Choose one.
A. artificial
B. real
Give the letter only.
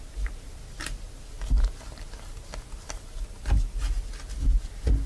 B